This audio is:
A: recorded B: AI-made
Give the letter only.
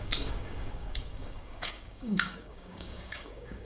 B